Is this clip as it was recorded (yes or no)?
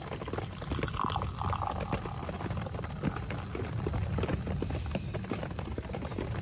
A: yes